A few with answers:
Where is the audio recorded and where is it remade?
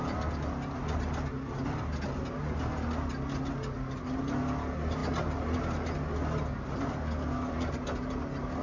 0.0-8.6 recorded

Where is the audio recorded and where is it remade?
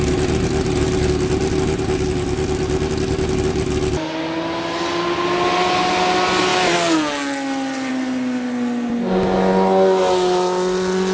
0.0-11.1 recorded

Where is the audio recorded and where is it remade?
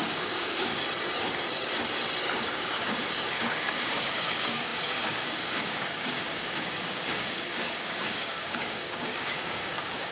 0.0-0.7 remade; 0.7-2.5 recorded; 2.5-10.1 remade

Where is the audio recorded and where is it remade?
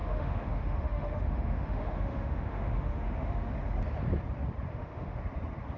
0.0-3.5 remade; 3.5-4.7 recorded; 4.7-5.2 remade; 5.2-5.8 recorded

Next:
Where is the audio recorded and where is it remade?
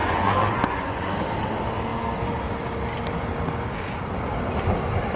0.0-1.1 remade; 1.1-5.2 recorded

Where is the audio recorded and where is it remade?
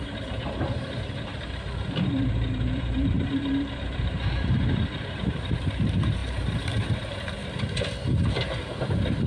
0.0-7.4 remade; 7.4-9.3 recorded